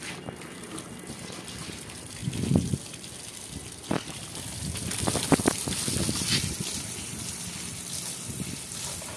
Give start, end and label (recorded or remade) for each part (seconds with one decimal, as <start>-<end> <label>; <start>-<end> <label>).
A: 0.0-9.2 recorded